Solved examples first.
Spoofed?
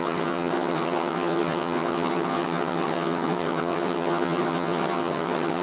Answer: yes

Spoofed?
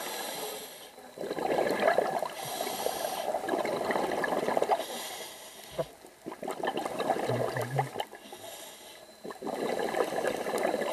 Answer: no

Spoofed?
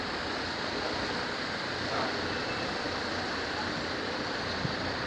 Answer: no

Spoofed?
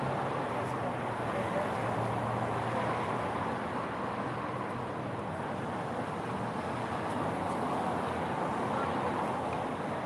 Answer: no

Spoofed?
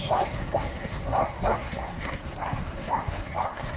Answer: yes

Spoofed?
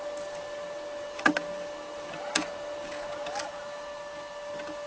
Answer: no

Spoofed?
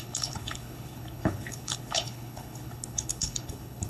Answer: yes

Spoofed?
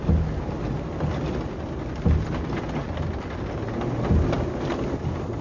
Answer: no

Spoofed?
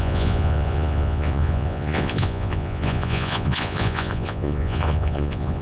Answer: yes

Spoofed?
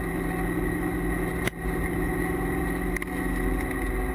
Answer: no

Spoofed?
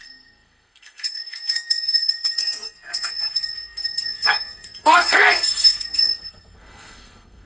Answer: yes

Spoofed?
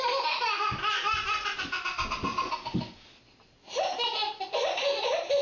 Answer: no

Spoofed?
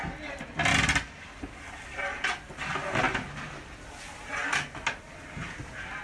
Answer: no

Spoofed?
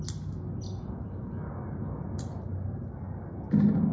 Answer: no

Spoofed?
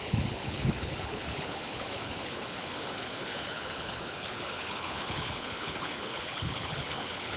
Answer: yes